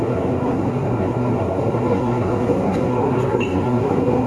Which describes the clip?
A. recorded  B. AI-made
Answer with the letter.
B